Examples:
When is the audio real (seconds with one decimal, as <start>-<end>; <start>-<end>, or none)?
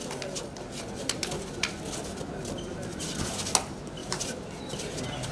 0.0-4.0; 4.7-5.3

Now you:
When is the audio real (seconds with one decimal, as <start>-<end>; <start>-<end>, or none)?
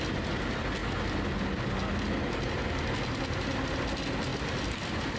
0.0-4.3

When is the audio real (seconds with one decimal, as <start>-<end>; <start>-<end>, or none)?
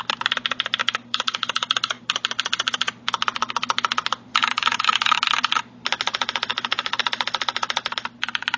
0.0-0.8; 2.1-4.4; 5.2-6.5; 7.0-8.6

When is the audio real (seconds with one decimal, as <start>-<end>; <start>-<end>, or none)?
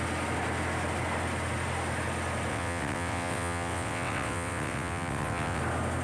0.0-2.5; 5.6-6.0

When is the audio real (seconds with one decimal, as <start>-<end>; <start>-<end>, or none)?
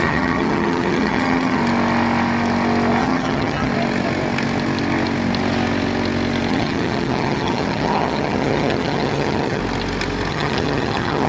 1.6-3.0; 3.7-6.5; 9.6-10.3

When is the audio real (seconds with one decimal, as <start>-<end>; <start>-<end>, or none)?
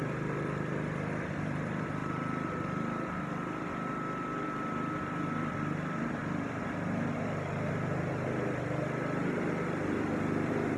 2.0-3.6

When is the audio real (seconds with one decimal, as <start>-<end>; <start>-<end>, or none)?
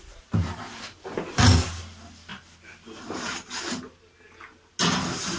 0.0-5.4